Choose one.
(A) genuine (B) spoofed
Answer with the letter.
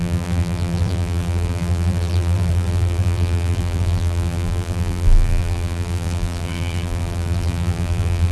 B